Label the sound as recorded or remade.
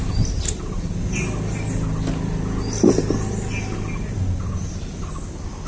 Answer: recorded